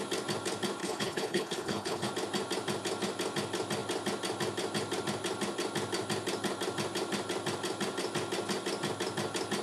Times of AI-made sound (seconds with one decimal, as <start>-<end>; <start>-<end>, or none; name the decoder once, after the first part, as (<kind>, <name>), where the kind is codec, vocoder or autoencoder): 0.8-2.1 (codec, HILCodec)